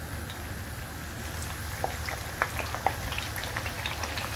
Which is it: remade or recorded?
recorded